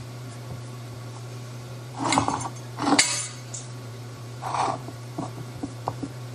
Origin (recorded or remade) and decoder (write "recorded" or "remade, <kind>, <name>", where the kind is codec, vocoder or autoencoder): remade, vocoder, BigVGAN v2